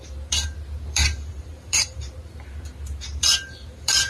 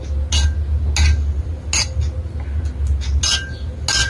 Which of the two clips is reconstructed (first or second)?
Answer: first